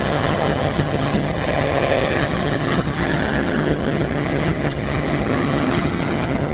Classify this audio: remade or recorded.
remade